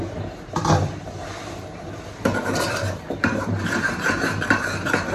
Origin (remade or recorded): remade